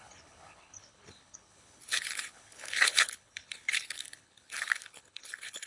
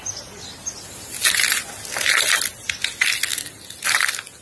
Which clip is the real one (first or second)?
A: second